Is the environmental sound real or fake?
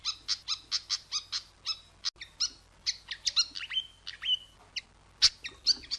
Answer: real